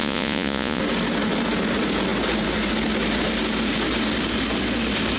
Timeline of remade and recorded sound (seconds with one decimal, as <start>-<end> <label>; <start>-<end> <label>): 0.0-0.8 remade; 0.8-5.2 recorded